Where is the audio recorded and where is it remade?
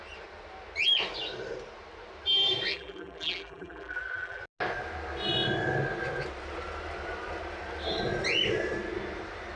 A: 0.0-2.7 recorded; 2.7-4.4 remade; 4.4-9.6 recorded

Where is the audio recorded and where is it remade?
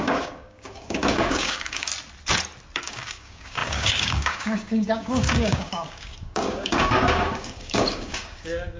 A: 0.0-1.9 remade; 1.9-2.8 recorded; 2.8-8.8 remade